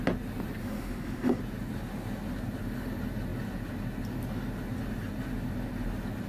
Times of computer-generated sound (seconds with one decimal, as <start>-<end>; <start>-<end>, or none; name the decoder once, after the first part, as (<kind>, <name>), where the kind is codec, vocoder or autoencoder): 0.6-1.4 (autoencoder, DAC-VAE)